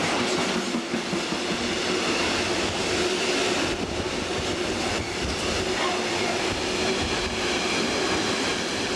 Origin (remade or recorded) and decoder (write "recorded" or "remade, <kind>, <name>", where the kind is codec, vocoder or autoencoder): recorded